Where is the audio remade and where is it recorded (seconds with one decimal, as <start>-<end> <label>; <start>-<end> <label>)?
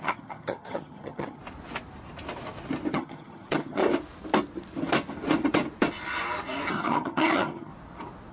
0.0-1.4 remade; 1.4-2.9 recorded; 2.9-3.8 remade; 3.8-6.7 recorded; 6.7-7.7 remade; 7.7-8.3 recorded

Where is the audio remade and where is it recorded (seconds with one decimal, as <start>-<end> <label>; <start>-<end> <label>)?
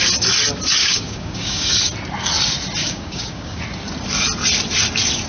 0.0-0.8 recorded; 0.8-1.8 remade; 1.8-2.8 recorded; 2.8-3.6 remade; 3.6-5.3 recorded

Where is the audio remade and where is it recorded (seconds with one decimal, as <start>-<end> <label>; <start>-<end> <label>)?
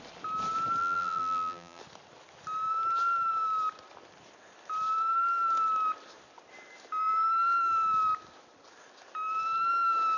0.0-0.8 recorded; 0.8-1.8 remade; 1.8-10.2 recorded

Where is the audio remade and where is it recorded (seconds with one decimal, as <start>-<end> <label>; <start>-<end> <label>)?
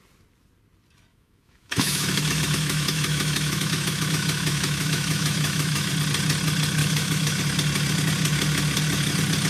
0.0-1.1 recorded; 1.1-5.9 remade; 5.9-6.8 recorded; 6.8-7.4 remade; 7.4-9.5 recorded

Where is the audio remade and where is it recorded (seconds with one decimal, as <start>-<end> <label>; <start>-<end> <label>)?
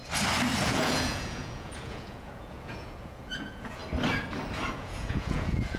0.0-0.6 recorded; 0.6-3.8 remade; 3.8-4.7 recorded; 4.7-5.8 remade